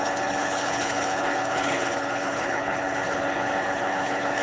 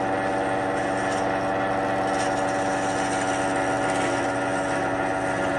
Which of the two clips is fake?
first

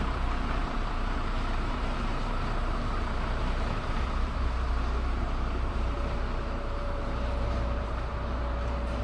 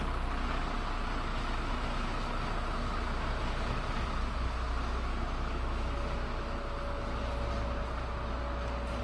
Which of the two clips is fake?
first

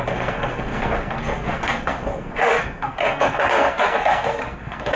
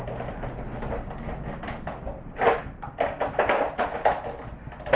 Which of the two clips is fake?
first